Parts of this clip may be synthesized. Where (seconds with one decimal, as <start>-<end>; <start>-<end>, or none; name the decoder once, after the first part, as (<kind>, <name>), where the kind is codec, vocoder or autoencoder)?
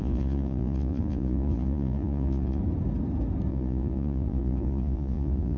0.0-2.6 (vocoder, Vocos); 3.5-5.6